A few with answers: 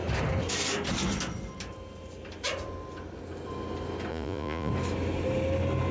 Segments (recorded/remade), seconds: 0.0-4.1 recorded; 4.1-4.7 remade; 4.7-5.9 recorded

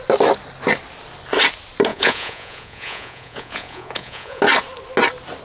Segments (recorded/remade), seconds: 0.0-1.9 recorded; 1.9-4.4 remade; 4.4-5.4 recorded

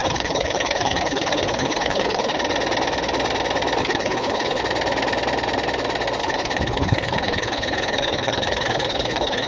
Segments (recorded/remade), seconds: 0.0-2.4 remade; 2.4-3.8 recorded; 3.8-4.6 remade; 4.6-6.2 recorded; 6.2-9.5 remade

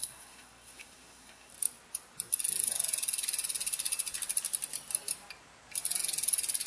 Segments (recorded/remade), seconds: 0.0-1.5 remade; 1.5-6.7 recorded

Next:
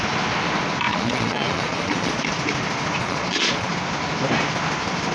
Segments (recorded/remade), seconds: 0.0-0.9 recorded; 0.9-2.3 remade; 2.3-3.0 recorded; 3.0-3.7 remade; 3.7-5.1 recorded